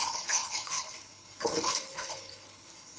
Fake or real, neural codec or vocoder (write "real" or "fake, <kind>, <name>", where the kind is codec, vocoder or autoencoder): fake, codec, HILCodec